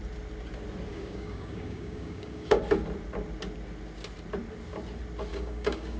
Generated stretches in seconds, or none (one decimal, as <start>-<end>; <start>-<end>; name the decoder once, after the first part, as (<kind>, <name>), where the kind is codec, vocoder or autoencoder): 0.9-2.6 (codec, DAC); 5.3-6.0